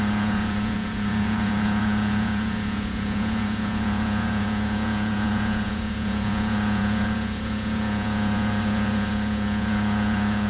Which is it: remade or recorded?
remade